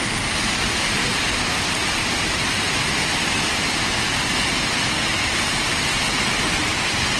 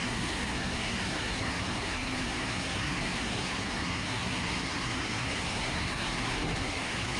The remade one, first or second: second